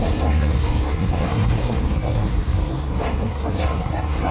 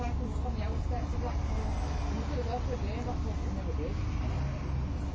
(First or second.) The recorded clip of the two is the second